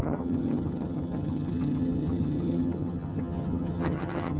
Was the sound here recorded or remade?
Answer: remade